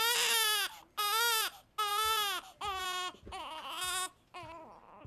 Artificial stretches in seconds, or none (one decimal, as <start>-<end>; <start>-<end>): none